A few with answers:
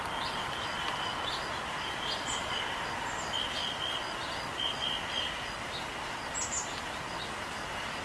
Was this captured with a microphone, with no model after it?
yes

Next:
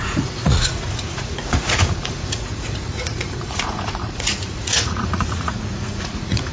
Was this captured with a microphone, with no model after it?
no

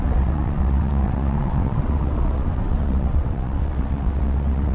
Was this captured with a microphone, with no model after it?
no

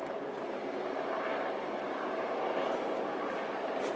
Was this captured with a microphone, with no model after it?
no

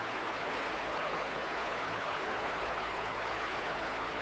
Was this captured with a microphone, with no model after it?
no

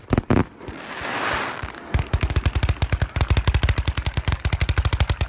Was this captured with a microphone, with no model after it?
yes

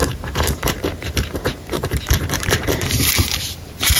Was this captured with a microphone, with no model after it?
no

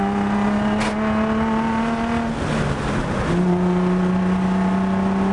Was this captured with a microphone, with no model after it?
yes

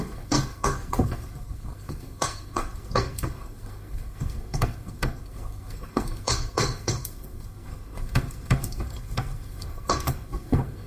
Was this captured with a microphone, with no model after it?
no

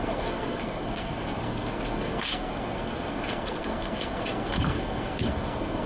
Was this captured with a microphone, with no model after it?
no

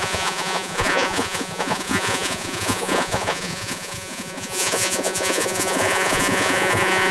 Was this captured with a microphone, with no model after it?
no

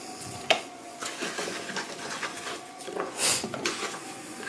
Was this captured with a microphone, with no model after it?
no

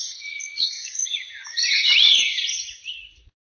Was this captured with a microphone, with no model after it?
no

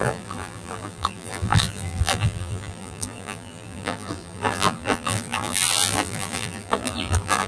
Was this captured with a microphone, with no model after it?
no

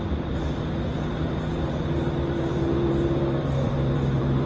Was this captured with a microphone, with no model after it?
no